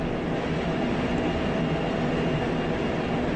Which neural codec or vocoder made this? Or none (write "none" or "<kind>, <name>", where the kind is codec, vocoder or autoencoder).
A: none